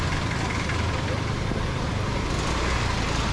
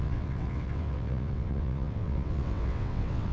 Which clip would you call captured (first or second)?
first